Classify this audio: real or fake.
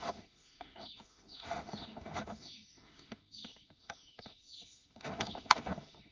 fake